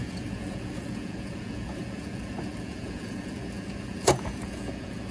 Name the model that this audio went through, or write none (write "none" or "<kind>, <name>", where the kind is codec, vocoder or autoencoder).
vocoder, Vocos